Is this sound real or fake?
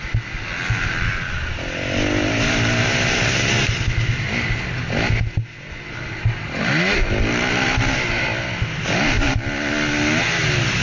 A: real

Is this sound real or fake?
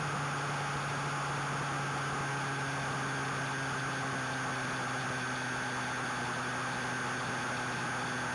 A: real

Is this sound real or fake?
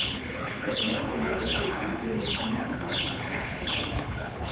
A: fake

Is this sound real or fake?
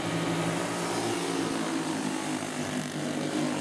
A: real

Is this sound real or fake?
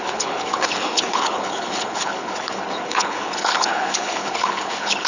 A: fake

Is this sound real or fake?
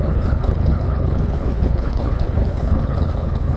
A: fake